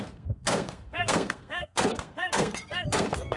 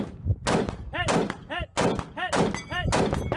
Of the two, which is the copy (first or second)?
first